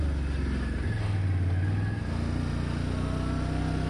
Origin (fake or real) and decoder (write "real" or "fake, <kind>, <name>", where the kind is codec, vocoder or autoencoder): real